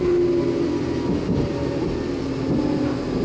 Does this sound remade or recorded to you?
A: recorded